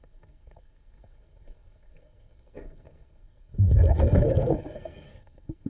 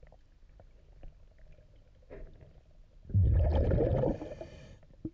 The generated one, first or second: first